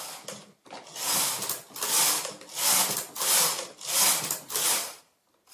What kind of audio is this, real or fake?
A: real